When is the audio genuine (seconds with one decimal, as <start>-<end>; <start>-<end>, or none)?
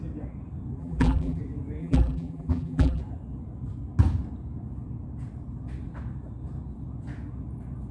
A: 0.0-0.8; 1.4-1.8; 3.0-7.9